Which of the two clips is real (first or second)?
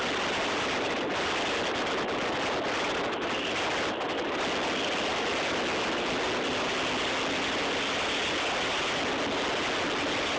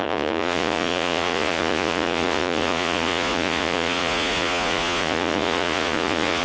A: first